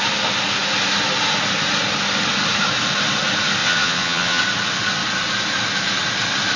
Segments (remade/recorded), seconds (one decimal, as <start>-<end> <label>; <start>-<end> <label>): 0.0-3.6 recorded; 3.6-4.4 remade; 4.4-6.6 recorded